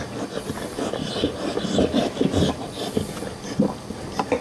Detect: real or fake real